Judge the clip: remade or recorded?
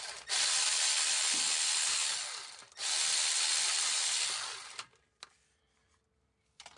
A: recorded